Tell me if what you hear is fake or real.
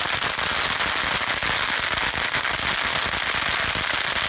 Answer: real